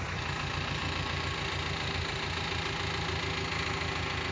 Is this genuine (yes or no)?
yes